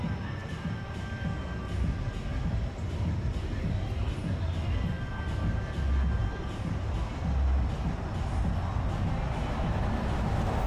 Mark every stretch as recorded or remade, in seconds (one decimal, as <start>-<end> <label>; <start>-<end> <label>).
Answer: 0.0-0.4 recorded; 0.4-1.4 remade; 1.4-2.3 recorded; 2.3-3.2 remade; 3.2-10.7 recorded

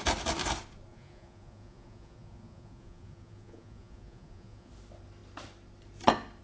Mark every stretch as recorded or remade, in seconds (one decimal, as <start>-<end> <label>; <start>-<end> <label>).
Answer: 0.0-0.9 recorded; 0.9-4.7 remade; 4.7-6.4 recorded

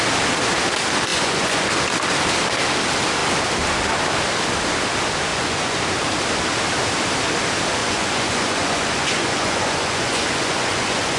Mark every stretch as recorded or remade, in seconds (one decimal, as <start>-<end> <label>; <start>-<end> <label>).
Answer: 0.0-1.1 recorded; 1.1-1.7 remade; 1.7-5.3 recorded; 5.3-5.8 remade; 5.8-7.8 recorded; 7.8-11.2 remade

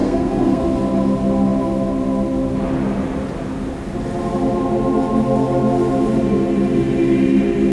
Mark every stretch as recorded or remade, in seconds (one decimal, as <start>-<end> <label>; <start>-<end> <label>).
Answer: 0.0-0.6 remade; 0.6-7.7 recorded

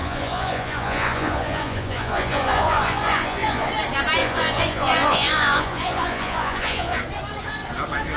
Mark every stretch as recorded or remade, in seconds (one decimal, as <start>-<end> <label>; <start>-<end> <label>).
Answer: 0.0-3.7 remade; 3.7-4.2 recorded; 4.2-7.0 remade; 7.0-8.2 recorded